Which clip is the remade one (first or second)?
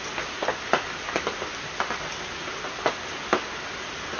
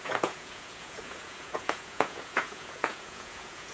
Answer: second